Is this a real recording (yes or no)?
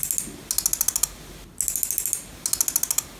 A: yes